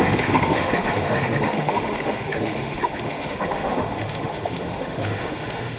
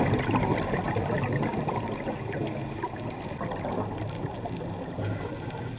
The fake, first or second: first